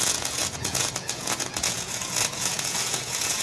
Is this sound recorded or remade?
remade